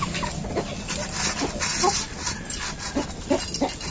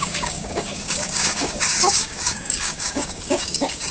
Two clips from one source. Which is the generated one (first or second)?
second